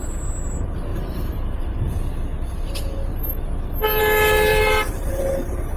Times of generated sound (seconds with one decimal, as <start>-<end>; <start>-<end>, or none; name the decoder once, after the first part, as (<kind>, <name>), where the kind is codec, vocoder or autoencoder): 0.9-1.6 (vocoder, BigVGAN v2); 4.5-5.2